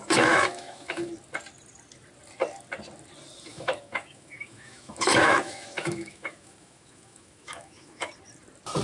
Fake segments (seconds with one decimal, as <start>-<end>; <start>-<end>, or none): 0.0-1.1; 3.5-8.1